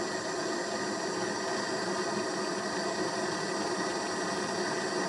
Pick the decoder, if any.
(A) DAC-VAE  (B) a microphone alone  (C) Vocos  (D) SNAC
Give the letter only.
B